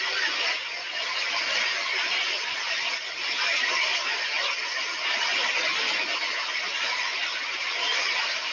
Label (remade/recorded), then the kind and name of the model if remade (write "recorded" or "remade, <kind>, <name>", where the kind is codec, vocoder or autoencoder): recorded